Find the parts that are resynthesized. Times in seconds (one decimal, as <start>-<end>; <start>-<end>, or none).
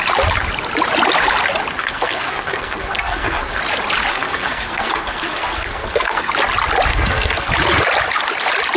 1.8-3.6; 4.1-6.3; 6.9-7.5